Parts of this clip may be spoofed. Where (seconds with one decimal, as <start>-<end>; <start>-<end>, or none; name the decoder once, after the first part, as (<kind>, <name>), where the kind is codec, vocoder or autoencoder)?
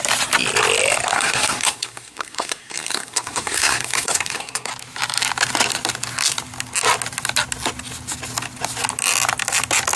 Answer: 1.1-4.7 (codec, SNAC)